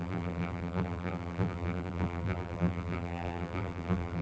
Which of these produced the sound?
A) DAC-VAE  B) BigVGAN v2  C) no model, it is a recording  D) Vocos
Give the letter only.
B